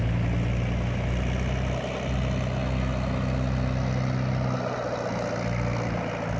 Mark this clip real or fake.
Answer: real